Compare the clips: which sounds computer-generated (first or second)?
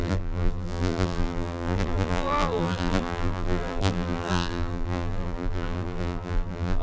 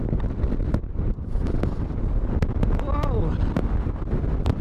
first